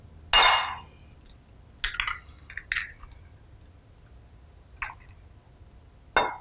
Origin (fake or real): real